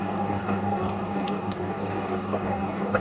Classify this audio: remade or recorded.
remade